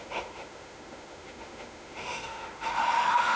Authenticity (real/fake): fake